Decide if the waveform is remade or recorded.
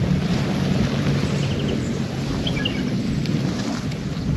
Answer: recorded